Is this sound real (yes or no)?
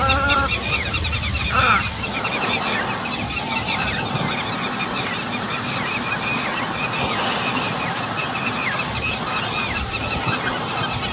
yes